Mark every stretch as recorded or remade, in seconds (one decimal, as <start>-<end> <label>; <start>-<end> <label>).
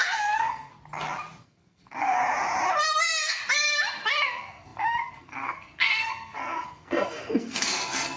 0.0-0.7 remade; 0.7-1.4 recorded; 1.4-2.2 remade; 2.2-3.0 recorded; 3.0-3.4 remade; 3.4-4.3 recorded; 4.3-8.2 remade